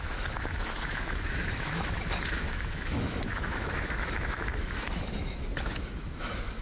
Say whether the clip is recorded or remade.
remade